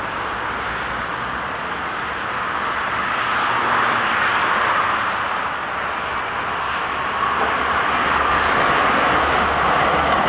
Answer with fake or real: real